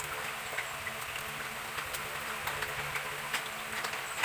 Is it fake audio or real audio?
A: real